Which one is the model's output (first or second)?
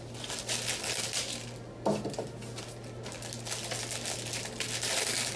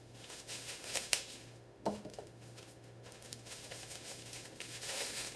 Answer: second